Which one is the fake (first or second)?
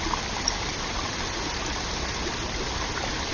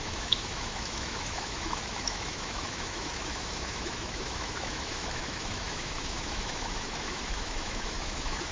second